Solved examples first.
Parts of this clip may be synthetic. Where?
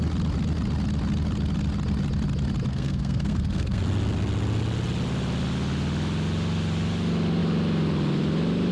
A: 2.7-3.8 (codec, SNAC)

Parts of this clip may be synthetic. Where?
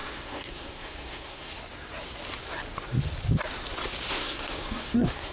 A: 0.0-1.5 (codec, SNAC); 4.1-5.3